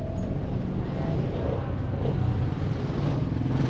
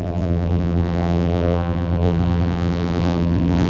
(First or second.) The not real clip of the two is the second